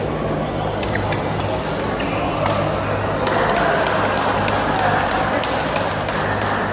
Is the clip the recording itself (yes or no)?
yes